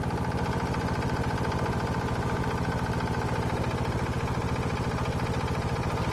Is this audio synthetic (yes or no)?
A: no